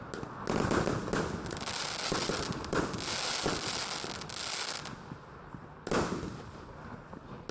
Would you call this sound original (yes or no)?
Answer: yes